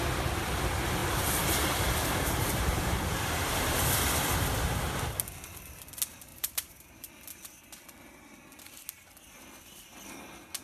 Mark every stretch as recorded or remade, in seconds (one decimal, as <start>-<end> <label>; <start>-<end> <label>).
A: 0.0-1.0 recorded; 1.0-3.9 remade; 3.9-6.3 recorded; 6.3-7.1 remade; 7.1-10.6 recorded